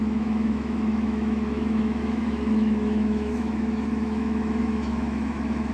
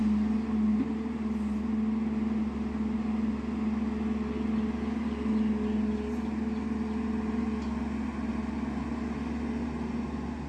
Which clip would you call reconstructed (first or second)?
first